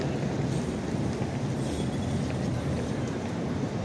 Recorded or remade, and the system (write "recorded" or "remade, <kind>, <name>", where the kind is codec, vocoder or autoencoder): recorded